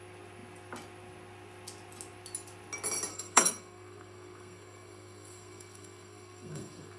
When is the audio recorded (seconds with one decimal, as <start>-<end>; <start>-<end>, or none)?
0.0-3.1